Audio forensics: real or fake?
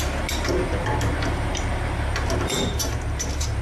fake